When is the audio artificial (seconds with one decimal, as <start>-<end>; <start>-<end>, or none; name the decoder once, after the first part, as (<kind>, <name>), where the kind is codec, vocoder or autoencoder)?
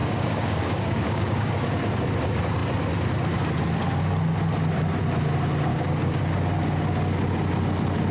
0.0-1.5 (codec, DAC); 5.7-6.2